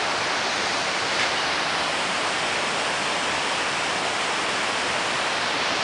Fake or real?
fake